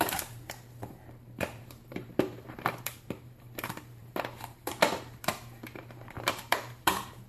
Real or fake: fake